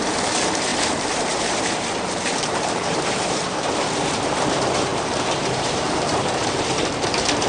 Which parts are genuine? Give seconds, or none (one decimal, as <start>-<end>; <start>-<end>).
none

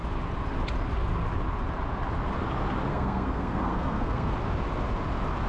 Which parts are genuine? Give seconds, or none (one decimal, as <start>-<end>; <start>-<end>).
0.0-2.9; 4.3-5.5